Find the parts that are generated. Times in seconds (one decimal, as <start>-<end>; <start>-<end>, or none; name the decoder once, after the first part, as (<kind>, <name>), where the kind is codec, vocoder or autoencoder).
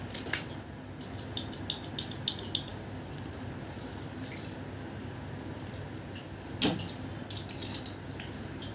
none